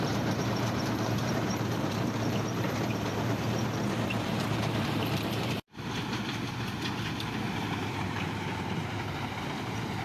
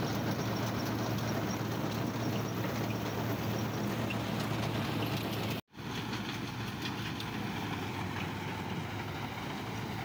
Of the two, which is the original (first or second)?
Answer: second